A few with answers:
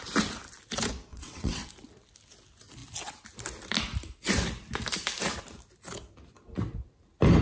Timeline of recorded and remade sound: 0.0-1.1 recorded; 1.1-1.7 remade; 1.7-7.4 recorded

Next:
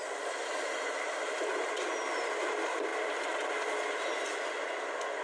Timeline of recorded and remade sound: 0.0-5.2 recorded

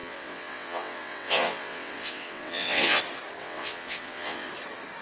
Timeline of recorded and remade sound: 0.0-3.0 remade; 3.0-3.4 recorded; 3.4-4.5 remade; 4.5-5.0 recorded

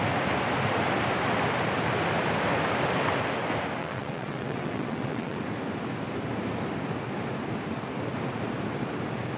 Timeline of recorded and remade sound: 0.0-3.8 recorded; 3.8-5.4 remade; 5.4-9.4 recorded

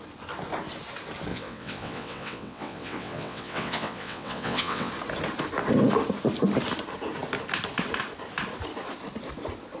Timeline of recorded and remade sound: 0.0-1.3 recorded; 1.3-4.9 remade; 4.9-9.8 recorded

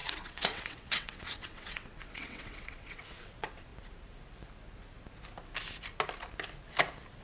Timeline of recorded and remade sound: 0.0-3.7 remade; 3.7-7.2 recorded